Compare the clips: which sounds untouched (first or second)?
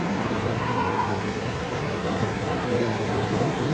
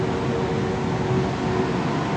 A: second